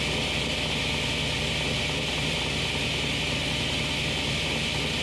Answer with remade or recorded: recorded